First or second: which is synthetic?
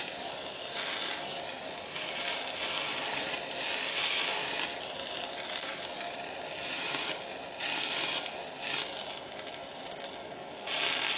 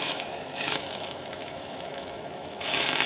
second